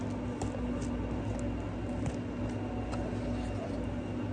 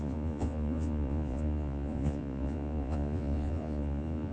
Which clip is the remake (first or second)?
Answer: second